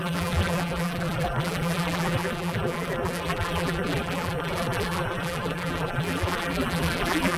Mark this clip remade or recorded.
remade